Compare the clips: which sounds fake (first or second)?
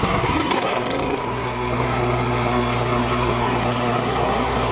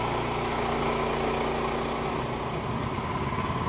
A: first